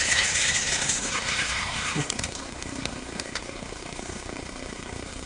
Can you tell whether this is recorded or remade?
remade